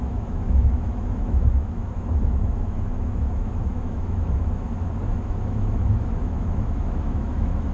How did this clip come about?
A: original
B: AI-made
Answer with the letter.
B